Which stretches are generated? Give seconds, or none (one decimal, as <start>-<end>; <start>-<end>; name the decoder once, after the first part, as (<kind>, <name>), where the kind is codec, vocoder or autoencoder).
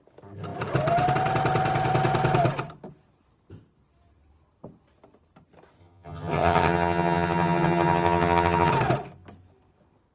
5.8-8.7 (vocoder, HiFi-GAN)